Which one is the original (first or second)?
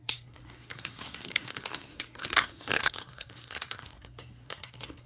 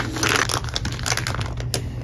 second